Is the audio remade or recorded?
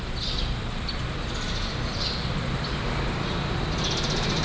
recorded